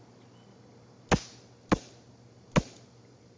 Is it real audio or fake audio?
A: real